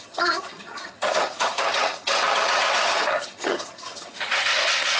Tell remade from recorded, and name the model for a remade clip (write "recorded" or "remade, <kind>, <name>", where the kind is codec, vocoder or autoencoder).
remade, vocoder, HiFi-GAN